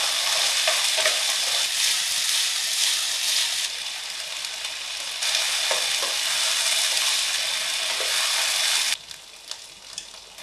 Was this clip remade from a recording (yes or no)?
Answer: no